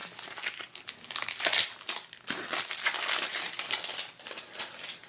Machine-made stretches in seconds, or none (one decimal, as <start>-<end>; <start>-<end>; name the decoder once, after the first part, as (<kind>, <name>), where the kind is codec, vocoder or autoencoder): none